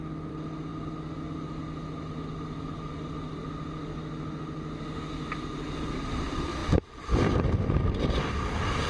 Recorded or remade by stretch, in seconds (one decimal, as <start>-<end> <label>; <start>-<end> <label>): 0.0-8.9 recorded